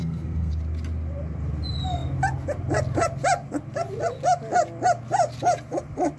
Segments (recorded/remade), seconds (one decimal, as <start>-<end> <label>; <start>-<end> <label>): 0.0-0.5 remade; 0.5-6.2 recorded